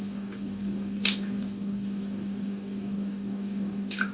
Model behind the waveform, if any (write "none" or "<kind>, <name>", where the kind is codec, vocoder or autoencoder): codec, DAC